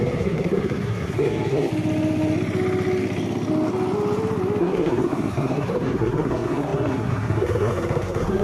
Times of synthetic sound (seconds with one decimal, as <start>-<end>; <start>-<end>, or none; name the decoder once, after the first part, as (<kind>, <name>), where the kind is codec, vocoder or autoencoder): 0.0-1.7 (codec, SNAC); 4.6-8.4